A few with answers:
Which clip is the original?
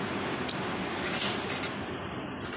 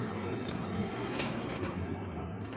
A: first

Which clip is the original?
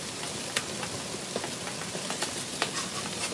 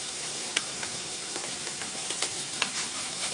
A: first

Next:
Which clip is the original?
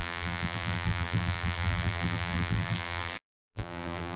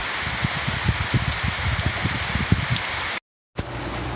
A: second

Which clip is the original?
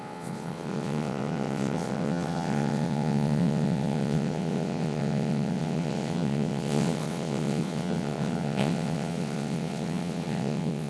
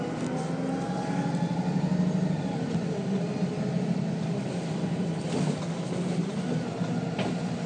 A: second